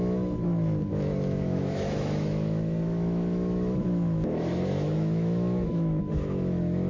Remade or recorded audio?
remade